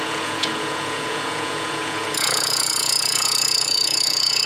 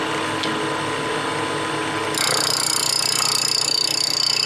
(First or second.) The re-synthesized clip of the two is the first